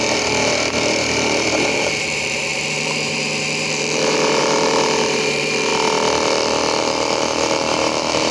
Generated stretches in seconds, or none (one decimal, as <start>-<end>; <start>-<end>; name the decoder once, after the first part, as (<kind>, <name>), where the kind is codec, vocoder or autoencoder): 0.0-5.7 (vocoder, BigVGAN v2); 6.8-8.3